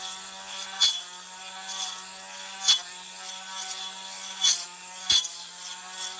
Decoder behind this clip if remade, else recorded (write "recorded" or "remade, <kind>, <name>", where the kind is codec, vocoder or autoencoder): recorded